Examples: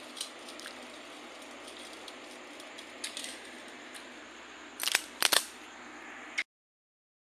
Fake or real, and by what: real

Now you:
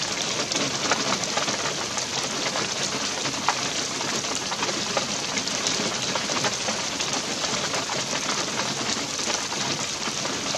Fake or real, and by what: fake, vocoder, BigVGAN v2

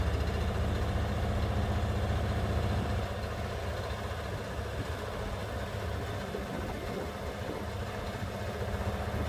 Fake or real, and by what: real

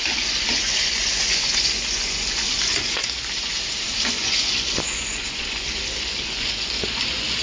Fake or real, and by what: fake, vocoder, Vocos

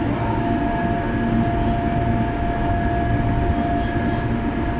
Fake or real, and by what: real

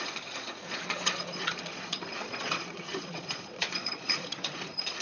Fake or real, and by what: fake, vocoder, Vocos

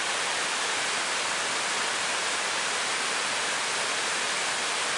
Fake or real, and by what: real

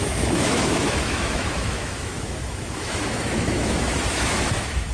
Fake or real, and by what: fake, autoencoder, DAC-VAE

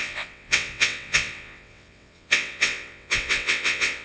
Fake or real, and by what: fake, vocoder, WaveNeXt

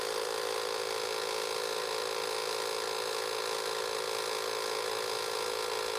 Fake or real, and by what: real